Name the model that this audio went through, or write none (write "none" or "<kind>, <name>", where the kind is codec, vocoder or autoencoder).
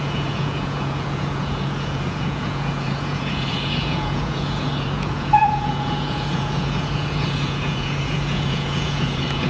vocoder, Vocos